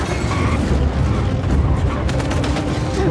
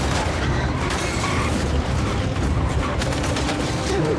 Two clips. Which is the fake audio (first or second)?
second